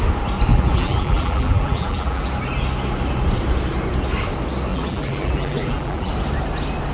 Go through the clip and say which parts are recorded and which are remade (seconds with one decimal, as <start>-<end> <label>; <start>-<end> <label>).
0.0-0.5 recorded; 0.5-2.3 remade; 2.3-4.7 recorded; 4.7-6.1 remade; 6.1-6.9 recorded